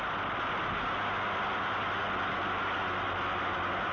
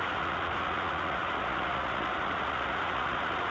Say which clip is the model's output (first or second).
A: second